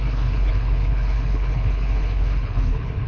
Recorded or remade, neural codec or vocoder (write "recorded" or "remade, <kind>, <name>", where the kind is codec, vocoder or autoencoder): remade, codec, HILCodec